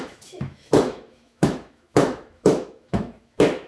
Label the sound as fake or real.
fake